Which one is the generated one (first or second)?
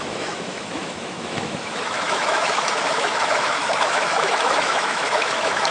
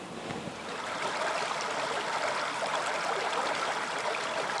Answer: first